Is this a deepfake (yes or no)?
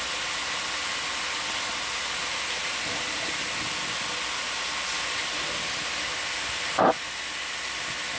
no